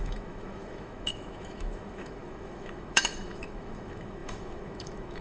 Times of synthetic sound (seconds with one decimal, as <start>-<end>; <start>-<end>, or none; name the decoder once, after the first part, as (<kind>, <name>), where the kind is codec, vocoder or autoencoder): 0.0-5.2 (autoencoder, DAC-VAE)